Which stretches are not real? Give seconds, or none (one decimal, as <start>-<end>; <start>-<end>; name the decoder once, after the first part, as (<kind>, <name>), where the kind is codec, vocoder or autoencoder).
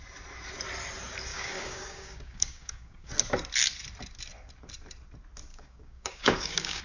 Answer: 1.3-3.1 (codec, DAC); 5.5-6.8